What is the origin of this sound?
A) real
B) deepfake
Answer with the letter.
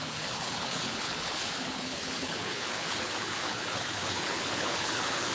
B